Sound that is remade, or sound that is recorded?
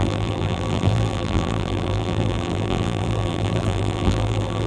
remade